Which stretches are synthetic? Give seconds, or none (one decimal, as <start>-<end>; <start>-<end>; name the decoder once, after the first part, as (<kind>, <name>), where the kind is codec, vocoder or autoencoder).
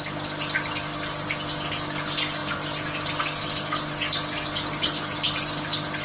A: none